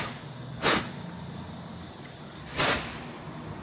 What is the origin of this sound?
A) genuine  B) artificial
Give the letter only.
A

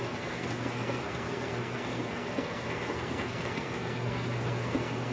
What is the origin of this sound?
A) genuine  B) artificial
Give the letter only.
B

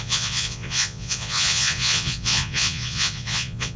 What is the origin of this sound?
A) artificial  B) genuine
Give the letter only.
A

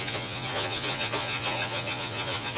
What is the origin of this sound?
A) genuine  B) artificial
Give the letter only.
B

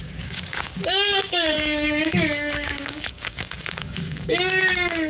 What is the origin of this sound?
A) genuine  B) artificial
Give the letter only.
B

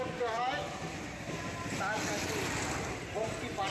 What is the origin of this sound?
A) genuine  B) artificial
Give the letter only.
A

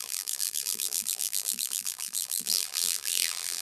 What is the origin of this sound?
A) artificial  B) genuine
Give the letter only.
A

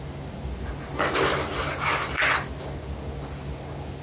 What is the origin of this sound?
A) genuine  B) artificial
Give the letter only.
A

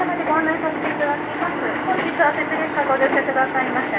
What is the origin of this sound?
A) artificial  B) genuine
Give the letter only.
B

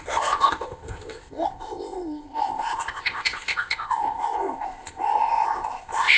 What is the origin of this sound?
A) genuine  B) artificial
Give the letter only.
B